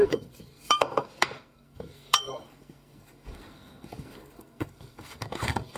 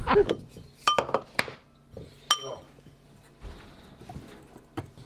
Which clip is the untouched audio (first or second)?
second